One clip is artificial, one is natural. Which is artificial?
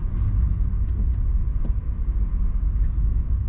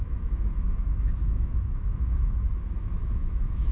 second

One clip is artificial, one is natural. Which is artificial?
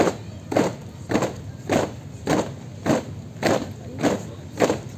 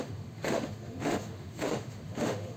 second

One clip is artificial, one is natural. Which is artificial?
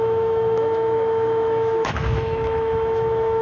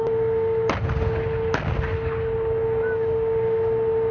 first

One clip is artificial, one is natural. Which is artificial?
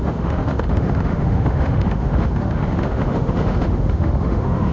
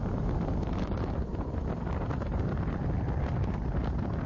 first